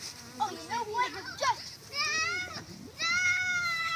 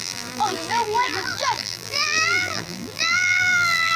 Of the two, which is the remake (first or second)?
second